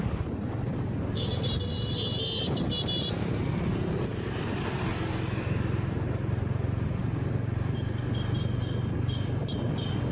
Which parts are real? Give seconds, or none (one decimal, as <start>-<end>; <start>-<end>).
0.0-10.1